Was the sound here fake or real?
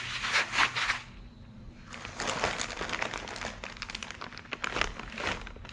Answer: real